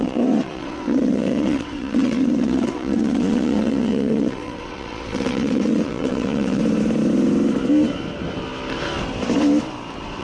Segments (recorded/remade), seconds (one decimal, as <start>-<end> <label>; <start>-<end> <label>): 0.0-6.6 remade; 6.6-10.2 recorded